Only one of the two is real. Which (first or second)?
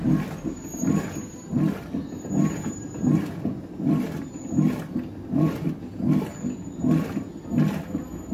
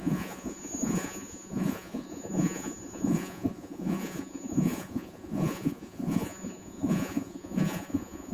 first